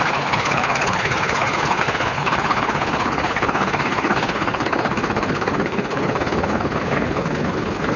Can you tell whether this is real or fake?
fake